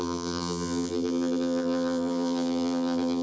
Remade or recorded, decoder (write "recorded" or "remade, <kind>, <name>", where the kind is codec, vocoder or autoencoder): remade, vocoder, BigVGAN v2